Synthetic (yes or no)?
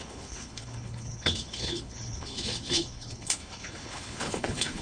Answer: yes